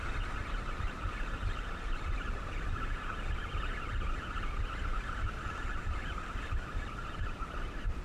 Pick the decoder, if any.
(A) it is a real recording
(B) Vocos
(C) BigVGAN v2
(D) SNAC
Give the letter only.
C